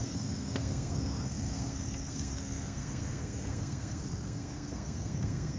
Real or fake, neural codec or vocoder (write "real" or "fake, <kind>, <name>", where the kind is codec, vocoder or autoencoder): fake, codec, SNAC